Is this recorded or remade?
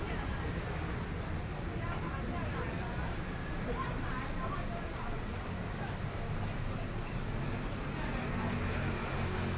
recorded